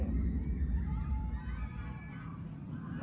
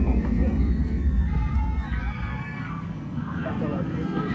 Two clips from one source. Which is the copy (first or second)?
second